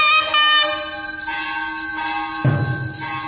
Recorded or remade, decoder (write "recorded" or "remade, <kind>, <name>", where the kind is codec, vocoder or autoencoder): recorded